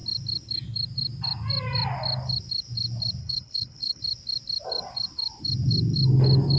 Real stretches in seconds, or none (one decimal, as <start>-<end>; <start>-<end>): 0.0-3.2; 4.0-6.6